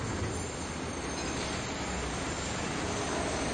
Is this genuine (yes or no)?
yes